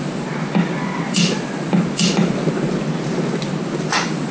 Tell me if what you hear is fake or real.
real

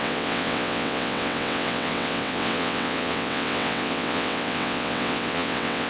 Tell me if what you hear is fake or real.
fake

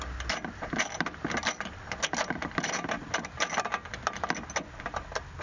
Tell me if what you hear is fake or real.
real